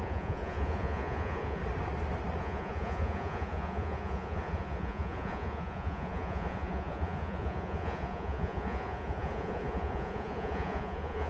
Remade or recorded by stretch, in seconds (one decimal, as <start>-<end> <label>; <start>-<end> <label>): 0.0-1.6 remade; 1.6-2.4 recorded; 2.4-11.3 remade